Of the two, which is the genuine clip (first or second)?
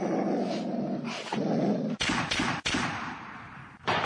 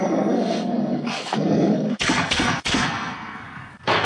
first